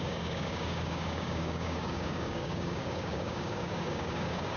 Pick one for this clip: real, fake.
fake